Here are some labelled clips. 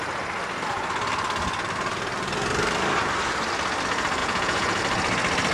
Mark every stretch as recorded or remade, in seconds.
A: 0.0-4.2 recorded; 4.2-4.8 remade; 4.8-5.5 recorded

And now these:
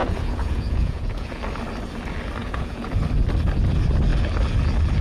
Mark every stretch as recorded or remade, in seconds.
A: 0.0-1.4 remade; 1.4-2.4 recorded; 2.4-3.0 remade; 3.0-5.0 recorded

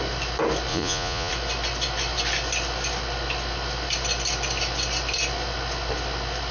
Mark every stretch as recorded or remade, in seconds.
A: 0.0-0.7 recorded; 0.7-1.3 remade; 1.3-6.5 recorded